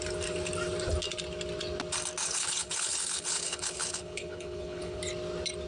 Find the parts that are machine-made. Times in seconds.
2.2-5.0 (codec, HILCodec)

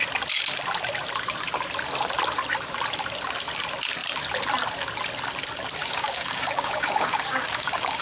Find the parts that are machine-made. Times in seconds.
5.8-8.0 (codec, DAC)

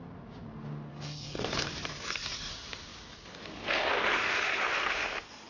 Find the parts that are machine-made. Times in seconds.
0.9-1.4 (codec, SNAC)